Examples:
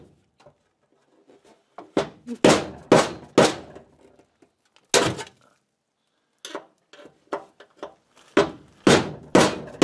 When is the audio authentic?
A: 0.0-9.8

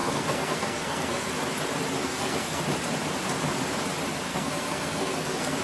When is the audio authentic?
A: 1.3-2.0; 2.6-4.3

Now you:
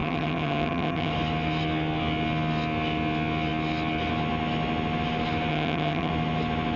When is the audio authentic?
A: 1.1-5.5; 6.1-6.8

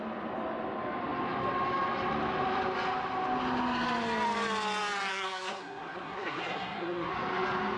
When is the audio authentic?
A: 0.0-5.1; 7.1-7.8

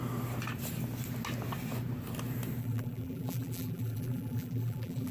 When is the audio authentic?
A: 0.0-2.6

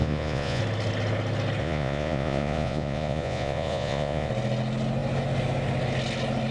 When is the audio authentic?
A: 0.6-1.6; 4.3-6.5